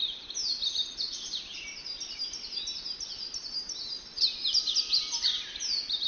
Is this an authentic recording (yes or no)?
yes